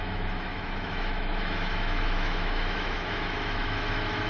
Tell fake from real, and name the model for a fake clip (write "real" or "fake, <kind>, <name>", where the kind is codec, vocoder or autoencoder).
fake, autoencoder, DAC-VAE